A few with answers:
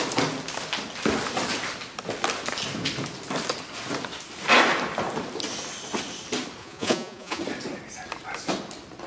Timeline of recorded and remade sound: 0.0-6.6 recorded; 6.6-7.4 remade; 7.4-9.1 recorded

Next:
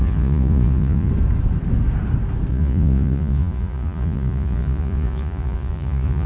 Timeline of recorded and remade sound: 0.0-1.1 remade; 1.1-2.5 recorded; 2.5-6.3 remade

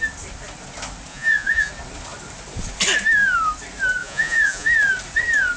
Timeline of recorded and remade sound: 0.0-1.1 recorded; 1.1-1.7 remade; 1.7-4.0 recorded; 4.0-4.7 remade; 4.7-5.6 recorded

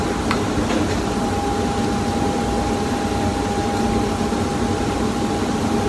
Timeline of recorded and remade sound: 0.0-5.9 recorded

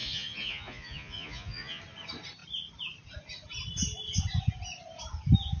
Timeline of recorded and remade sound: 0.0-1.8 remade; 1.8-5.6 recorded

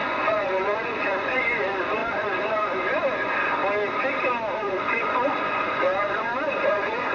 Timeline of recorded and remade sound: 0.0-3.6 remade; 3.6-4.6 recorded; 4.6-7.1 remade